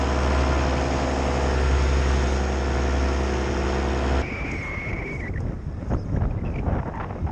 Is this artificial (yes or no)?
no